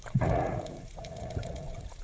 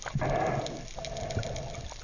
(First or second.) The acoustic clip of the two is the second